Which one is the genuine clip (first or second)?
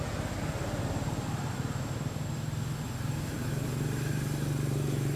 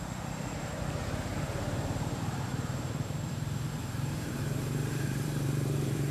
first